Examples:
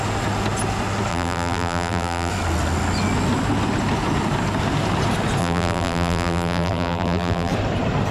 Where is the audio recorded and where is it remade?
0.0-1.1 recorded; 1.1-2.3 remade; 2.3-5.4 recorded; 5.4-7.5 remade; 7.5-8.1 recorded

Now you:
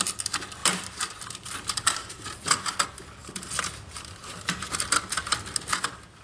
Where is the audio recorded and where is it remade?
0.0-0.6 recorded; 0.6-2.4 remade; 2.4-6.2 recorded